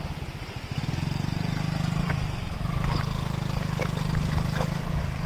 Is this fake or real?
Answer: real